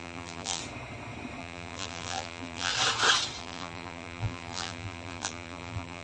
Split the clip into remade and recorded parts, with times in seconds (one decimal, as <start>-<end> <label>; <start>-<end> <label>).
0.0-0.6 remade; 0.6-1.4 recorded; 1.4-2.7 remade; 2.7-3.4 recorded; 3.4-6.0 remade